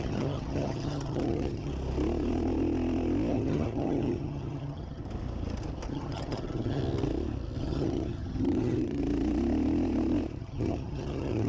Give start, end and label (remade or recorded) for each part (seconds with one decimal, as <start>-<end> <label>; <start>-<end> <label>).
0.0-1.7 remade; 1.7-3.3 recorded; 3.3-5.0 remade; 5.0-5.9 recorded; 5.9-6.8 remade; 6.8-7.6 recorded; 7.6-9.0 remade; 9.0-10.4 recorded; 10.4-11.5 remade